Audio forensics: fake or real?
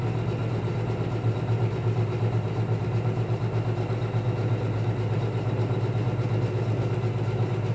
real